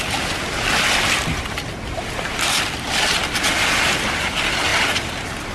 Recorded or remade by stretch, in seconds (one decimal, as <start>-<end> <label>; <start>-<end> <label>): 0.0-5.5 recorded